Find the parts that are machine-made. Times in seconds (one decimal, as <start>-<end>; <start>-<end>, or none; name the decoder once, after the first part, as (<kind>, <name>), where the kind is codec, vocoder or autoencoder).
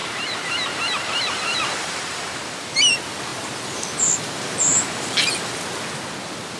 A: 0.0-2.9 (vocoder, BigVGAN v2); 4.7-5.5